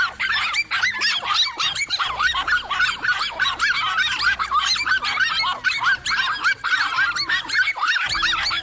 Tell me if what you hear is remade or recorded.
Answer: recorded